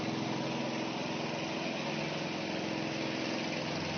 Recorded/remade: recorded